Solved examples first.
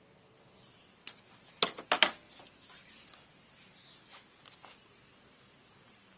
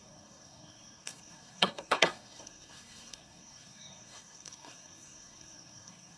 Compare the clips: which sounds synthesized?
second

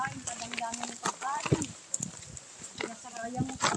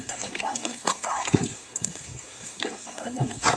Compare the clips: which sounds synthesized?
second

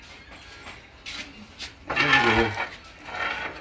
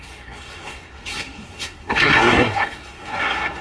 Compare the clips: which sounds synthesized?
second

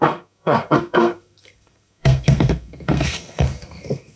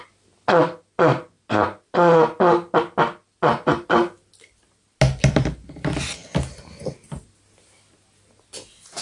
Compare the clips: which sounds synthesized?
first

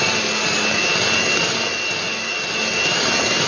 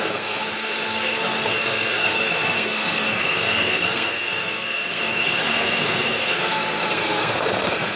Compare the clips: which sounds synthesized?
second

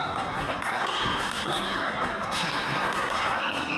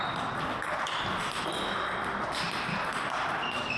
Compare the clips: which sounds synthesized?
first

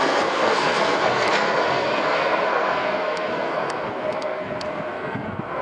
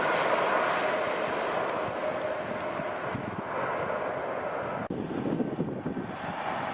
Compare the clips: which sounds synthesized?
first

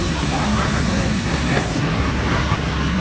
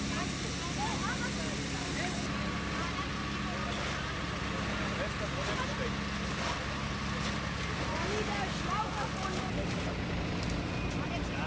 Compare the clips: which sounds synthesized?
first